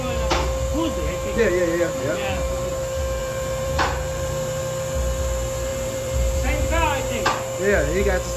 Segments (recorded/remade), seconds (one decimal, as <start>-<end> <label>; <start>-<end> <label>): 0.0-0.7 recorded; 0.7-2.7 remade; 2.7-3.2 recorded; 3.2-4.6 remade; 4.6-5.7 recorded; 5.7-7.6 remade; 7.6-8.4 recorded